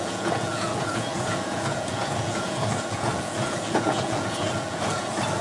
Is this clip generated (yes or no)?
yes